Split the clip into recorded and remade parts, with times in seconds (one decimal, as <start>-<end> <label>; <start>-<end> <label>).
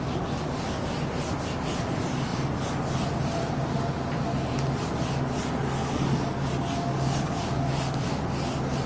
0.0-5.8 recorded; 5.8-8.1 remade; 8.1-8.9 recorded